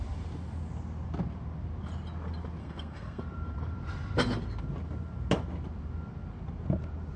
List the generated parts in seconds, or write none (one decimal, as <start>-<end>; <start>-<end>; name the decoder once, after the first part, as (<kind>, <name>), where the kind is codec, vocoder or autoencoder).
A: 2.6-3.2 (codec, SNAC)